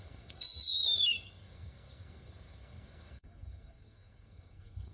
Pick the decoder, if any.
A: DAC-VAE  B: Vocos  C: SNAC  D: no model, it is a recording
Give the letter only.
C